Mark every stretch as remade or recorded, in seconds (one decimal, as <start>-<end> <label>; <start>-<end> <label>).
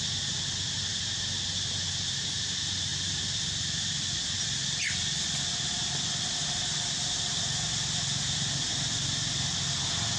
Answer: 0.0-0.9 recorded; 0.9-1.9 remade; 1.9-2.9 recorded; 2.9-6.1 remade; 6.1-10.2 recorded